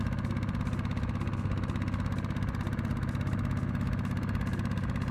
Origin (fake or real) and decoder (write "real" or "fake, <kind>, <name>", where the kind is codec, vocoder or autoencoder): real